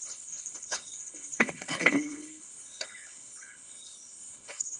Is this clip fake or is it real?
fake